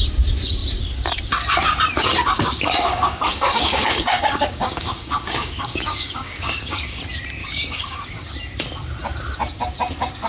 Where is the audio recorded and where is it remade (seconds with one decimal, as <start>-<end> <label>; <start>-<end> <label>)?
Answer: 0.0-2.2 recorded; 2.2-7.0 remade; 7.0-7.4 recorded; 7.4-8.3 remade; 8.3-10.3 recorded